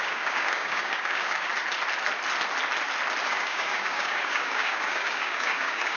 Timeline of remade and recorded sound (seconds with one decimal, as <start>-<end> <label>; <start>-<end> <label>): 0.0-1.5 remade; 1.5-3.3 recorded; 3.3-6.0 remade